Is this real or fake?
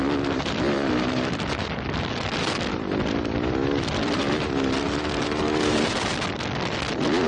real